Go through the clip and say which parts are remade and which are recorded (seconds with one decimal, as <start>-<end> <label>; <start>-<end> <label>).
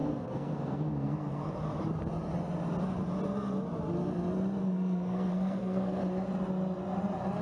0.0-1.5 remade; 1.5-4.6 recorded; 4.6-6.0 remade; 6.0-7.4 recorded